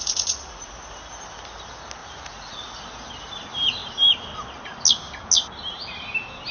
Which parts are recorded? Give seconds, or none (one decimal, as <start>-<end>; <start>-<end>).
0.7-2.0; 2.8-6.5